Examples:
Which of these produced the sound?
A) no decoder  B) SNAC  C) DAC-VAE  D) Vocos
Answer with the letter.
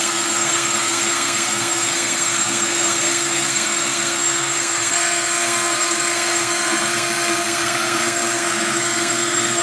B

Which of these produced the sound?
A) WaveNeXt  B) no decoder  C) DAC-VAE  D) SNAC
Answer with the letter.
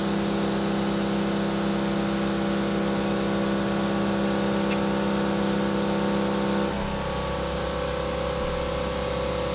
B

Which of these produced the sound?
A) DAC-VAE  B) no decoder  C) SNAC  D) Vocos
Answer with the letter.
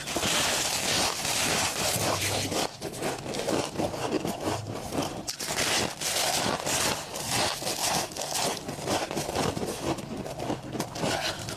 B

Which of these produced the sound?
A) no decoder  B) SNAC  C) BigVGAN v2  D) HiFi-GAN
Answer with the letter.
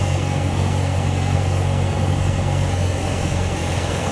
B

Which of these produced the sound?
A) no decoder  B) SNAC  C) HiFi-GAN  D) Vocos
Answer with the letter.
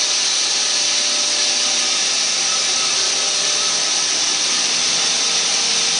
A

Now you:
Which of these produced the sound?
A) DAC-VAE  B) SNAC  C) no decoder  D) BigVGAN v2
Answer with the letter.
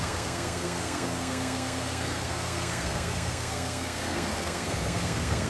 B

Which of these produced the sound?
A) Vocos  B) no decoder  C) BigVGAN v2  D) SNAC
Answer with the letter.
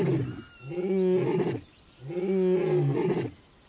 B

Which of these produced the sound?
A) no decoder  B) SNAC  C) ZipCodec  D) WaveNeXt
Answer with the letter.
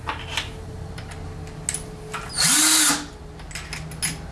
A